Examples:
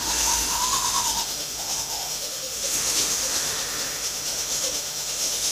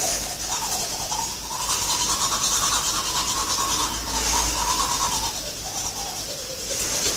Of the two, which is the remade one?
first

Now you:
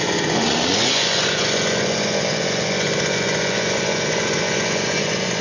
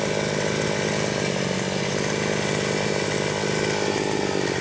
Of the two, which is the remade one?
first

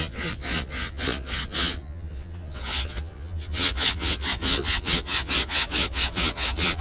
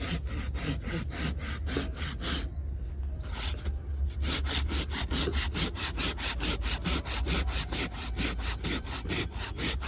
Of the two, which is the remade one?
first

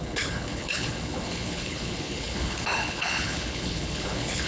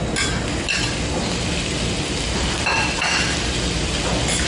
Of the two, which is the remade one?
first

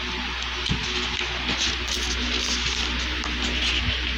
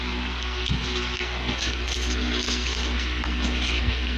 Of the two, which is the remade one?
second